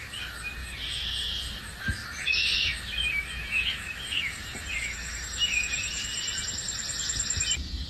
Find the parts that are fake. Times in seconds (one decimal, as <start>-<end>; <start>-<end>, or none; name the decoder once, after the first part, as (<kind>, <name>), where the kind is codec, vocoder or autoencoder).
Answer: 0.0-6.1 (autoencoder, DAC-VAE)